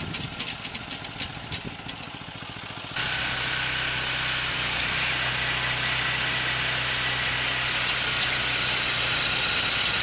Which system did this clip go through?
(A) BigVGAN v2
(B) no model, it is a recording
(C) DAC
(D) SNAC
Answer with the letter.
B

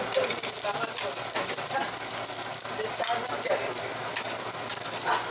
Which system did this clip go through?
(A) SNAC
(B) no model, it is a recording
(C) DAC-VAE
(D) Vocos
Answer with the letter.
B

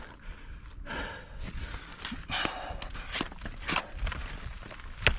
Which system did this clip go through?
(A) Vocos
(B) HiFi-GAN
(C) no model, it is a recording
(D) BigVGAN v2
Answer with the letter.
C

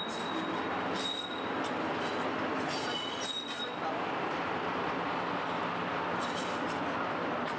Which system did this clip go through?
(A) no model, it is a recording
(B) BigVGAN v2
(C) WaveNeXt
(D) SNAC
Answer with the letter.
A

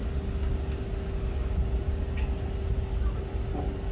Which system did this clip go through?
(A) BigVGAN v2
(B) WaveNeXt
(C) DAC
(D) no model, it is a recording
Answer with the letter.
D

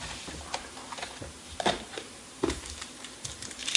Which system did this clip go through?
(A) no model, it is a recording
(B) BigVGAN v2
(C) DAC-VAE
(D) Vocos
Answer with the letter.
B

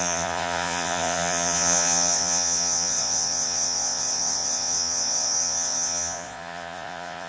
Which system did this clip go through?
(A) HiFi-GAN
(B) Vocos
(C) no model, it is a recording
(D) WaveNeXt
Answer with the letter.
B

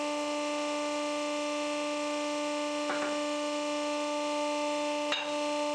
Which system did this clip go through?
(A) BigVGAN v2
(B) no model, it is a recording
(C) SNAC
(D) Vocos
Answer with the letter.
B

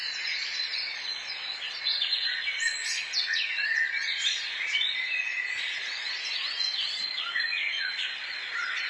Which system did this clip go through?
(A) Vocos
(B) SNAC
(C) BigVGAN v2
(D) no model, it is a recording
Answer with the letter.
A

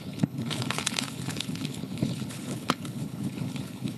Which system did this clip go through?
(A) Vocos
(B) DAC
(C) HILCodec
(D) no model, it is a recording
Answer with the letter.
C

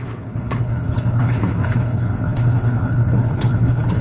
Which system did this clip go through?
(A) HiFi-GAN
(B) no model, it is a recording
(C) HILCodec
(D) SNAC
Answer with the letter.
C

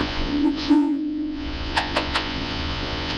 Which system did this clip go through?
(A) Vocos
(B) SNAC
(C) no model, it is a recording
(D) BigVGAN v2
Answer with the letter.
A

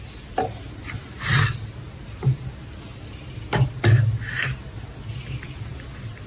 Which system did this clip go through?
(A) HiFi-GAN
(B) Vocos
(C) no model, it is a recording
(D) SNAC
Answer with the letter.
C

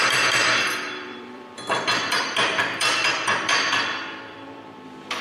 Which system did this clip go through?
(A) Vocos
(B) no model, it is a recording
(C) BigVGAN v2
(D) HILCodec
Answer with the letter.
C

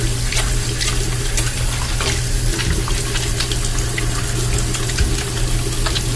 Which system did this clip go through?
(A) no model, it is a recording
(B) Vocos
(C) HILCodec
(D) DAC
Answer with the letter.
A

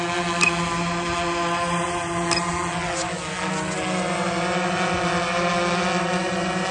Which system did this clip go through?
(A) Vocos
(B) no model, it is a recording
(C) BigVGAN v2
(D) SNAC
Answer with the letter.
B